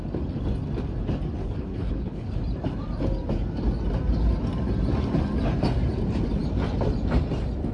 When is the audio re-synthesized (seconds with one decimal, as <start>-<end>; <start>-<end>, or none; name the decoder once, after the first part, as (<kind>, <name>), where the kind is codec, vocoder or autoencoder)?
1.4-2.3 (codec, HILCodec)